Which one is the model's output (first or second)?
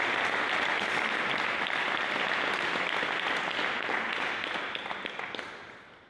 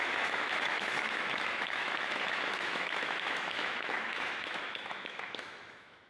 second